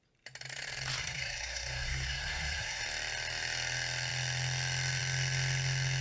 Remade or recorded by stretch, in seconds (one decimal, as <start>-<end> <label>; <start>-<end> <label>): 0.0-1.0 recorded; 1.0-2.8 remade; 2.8-6.0 recorded